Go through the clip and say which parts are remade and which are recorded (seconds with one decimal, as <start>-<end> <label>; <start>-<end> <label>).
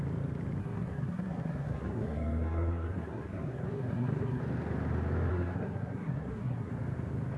0.0-0.6 recorded; 0.6-4.4 remade; 4.4-5.3 recorded; 5.3-6.7 remade; 6.7-7.4 recorded